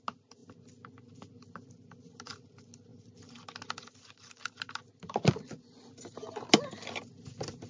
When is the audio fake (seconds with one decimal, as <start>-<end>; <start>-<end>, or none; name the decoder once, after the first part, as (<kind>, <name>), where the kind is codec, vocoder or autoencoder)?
none